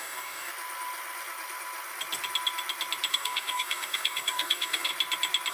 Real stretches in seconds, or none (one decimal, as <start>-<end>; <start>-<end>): 0.5-3.1; 4.9-5.5